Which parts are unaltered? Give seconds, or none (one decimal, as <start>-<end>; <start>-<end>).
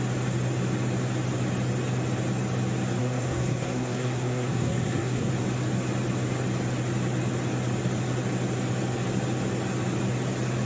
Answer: 0.0-3.0; 5.3-10.7